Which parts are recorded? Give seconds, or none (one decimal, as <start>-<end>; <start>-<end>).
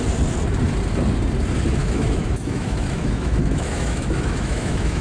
0.0-1.8